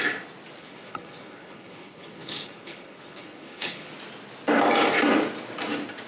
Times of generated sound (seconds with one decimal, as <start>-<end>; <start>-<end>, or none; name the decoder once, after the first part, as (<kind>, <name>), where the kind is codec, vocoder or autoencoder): 0.6-3.9 (codec, HILCodec)

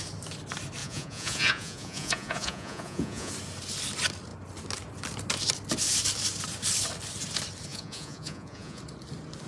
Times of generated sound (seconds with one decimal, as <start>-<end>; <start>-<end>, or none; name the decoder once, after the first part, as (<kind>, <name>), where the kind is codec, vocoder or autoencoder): 0.8-3.3 (vocoder, Vocos); 7.7-8.8

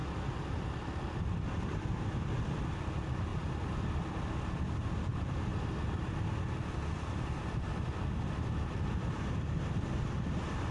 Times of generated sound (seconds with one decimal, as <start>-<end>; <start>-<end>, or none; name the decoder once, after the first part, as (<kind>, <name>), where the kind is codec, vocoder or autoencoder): none

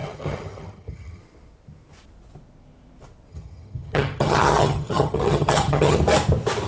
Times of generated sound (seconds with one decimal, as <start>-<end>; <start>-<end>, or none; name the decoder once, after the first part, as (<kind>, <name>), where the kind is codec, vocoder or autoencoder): 0.0-1.2 (vocoder, HiFi-GAN); 3.3-6.0

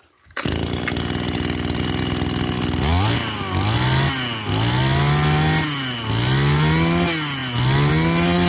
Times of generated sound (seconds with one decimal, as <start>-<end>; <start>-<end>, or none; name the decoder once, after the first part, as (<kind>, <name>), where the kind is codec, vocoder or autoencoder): none

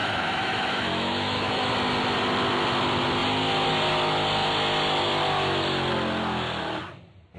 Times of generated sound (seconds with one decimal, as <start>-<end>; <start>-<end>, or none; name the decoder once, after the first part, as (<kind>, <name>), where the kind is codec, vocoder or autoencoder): 0.0-1.7 (autoencoder, DAC-VAE)

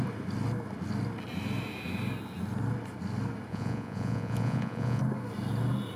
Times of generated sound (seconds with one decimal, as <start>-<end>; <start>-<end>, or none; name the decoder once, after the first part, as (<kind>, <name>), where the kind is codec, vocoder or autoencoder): 3.5-5.0 (vocoder, Vocos)